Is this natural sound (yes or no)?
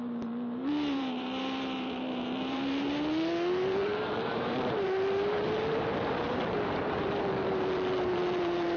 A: no